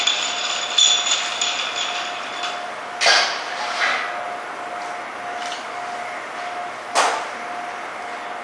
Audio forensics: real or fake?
real